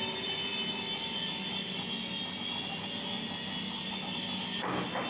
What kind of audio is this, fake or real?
real